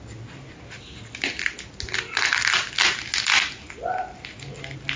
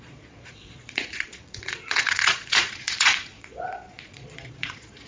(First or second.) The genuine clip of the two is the first